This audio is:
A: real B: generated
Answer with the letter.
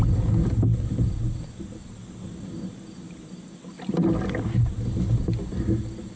A